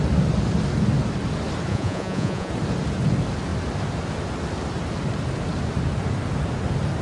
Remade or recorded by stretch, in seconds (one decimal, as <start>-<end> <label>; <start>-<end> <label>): 0.0-1.7 recorded; 1.7-2.5 remade; 2.5-7.0 recorded